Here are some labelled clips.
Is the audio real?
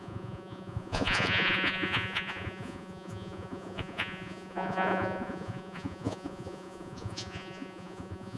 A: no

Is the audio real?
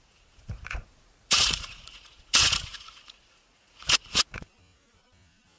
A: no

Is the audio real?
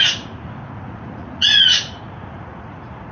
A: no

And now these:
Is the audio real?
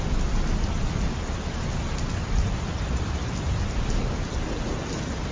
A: yes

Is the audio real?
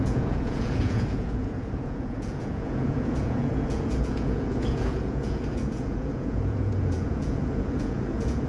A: no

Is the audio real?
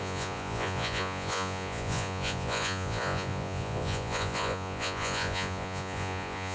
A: no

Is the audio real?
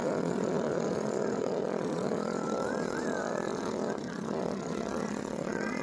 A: no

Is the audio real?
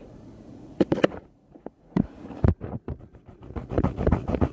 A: no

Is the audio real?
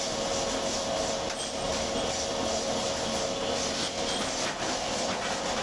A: yes